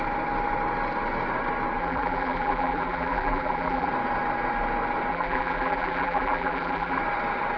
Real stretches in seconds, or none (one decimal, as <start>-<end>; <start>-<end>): 0.0-1.8; 3.9-5.1; 7.0-7.6